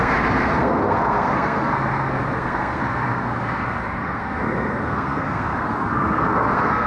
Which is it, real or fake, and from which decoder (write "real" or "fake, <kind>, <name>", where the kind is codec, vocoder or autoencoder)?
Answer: fake, codec, SNAC